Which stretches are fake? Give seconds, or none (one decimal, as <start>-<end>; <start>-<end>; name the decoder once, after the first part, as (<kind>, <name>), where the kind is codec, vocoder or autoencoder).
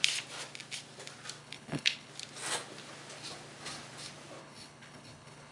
1.4-2.1 (codec, HILCodec); 4.4-5.5